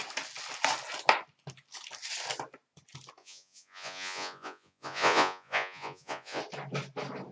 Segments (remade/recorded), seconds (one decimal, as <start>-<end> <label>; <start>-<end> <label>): 0.0-3.2 recorded; 3.2-6.4 remade; 6.4-7.3 recorded